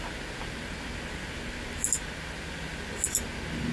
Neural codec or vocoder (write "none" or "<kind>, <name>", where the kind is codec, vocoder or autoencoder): none